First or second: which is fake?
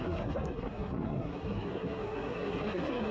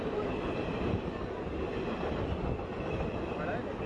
first